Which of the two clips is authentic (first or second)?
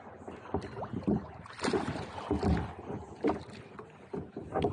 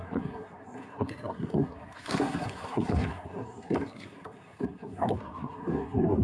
first